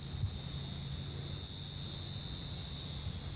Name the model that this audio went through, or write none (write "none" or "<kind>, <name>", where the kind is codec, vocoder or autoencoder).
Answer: none